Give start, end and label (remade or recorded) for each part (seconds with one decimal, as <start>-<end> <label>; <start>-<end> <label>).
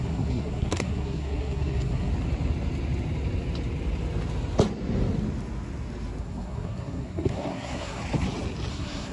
0.0-2.1 remade; 2.1-6.2 recorded; 6.2-8.0 remade; 8.0-8.7 recorded; 8.7-9.1 remade